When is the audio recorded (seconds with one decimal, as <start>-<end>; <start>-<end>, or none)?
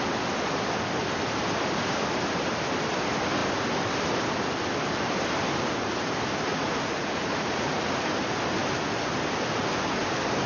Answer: 0.0-6.5; 8.0-10.5